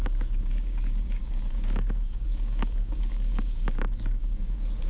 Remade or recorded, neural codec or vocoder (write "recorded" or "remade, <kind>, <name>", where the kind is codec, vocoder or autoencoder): remade, codec, DAC